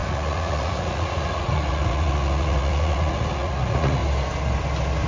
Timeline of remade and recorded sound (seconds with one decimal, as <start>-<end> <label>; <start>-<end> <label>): 0.0-4.0 remade; 4.0-5.1 recorded